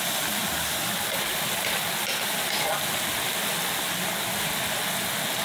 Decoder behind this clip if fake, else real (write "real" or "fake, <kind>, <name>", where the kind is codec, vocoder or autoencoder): real